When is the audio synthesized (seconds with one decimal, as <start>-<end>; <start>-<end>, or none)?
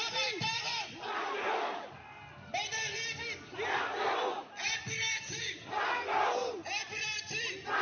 none